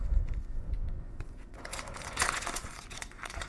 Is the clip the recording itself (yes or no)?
no